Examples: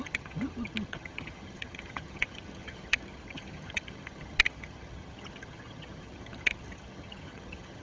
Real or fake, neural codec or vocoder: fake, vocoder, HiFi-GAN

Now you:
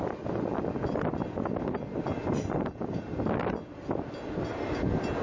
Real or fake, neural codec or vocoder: real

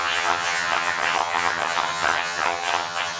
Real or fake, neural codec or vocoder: fake, vocoder, HiFi-GAN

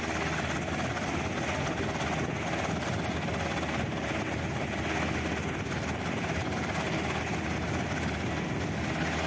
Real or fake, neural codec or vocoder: real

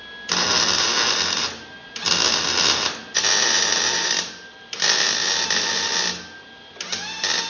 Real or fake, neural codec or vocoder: real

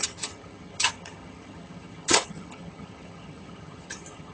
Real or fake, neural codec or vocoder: fake, vocoder, HiFi-GAN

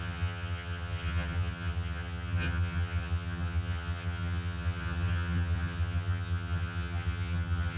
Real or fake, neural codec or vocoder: fake, vocoder, HiFi-GAN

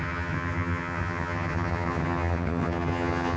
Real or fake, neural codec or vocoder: fake, vocoder, HiFi-GAN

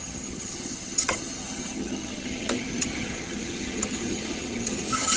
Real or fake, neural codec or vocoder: fake, vocoder, HiFi-GAN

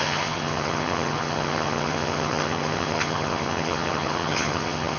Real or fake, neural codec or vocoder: fake, vocoder, HiFi-GAN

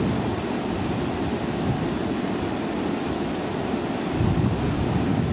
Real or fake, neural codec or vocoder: real